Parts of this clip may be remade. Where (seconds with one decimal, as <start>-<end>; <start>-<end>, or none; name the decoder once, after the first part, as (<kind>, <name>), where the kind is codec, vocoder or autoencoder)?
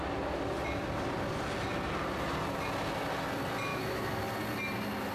3.7-4.2 (autoencoder, DAC-VAE)